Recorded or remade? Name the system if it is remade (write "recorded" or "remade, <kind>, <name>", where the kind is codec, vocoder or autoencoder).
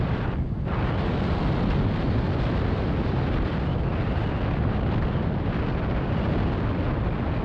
recorded